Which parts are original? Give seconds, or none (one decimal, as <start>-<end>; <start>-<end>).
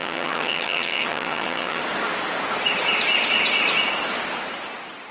1.8-5.1